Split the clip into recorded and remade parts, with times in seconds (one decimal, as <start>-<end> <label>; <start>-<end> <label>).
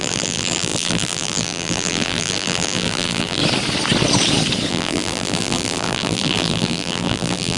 0.0-3.4 remade; 3.4-4.7 recorded; 4.7-7.6 remade